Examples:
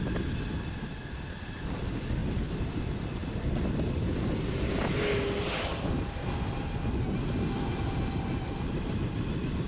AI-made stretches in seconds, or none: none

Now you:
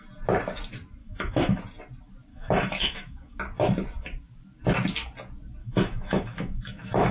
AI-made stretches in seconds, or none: 1.0-1.6 (autoencoder, DAC-VAE); 2.3-3.4; 5.6-7.1

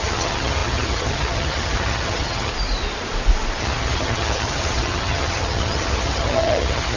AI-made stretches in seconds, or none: 0.0-2.5 (vocoder, HiFi-GAN); 3.6-7.0

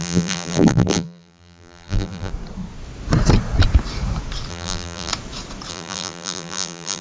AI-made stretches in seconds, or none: 0.0-2.3 (vocoder, BigVGAN v2); 4.5-5.1; 5.7-7.0